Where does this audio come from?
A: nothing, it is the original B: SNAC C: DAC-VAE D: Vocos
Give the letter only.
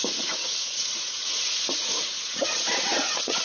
D